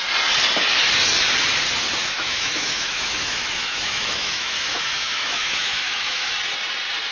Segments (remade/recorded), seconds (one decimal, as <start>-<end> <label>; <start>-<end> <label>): 0.0-2.0 recorded; 2.0-6.3 remade; 6.3-7.1 recorded